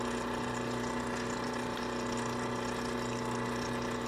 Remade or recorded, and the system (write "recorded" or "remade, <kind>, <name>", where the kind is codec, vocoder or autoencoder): recorded